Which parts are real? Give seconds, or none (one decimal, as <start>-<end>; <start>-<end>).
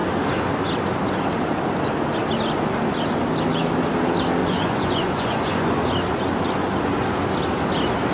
0.0-4.4; 5.9-8.1